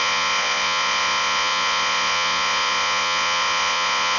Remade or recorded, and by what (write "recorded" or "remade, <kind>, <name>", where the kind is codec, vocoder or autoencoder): remade, vocoder, Vocos